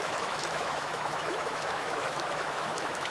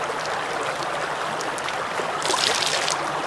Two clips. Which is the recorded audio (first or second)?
second